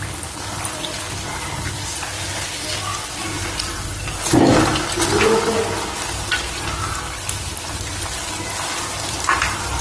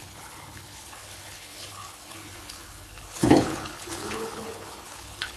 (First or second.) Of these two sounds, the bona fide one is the first